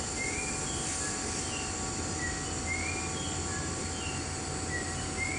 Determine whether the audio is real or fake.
real